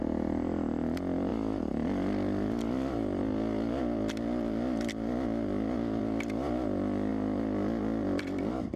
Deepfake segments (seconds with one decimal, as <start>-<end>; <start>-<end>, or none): none